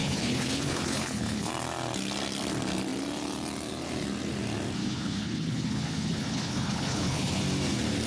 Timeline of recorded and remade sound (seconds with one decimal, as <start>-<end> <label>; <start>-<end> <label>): 0.0-1.5 remade; 1.5-4.8 recorded; 4.8-7.4 remade; 7.4-8.1 recorded

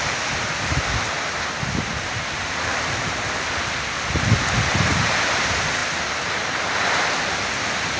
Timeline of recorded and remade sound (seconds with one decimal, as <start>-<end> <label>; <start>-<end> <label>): 0.0-8.0 recorded